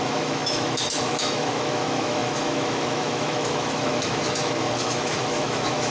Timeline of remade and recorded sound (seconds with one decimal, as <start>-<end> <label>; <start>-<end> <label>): 0.0-5.9 remade